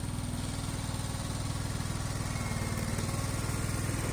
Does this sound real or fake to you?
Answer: real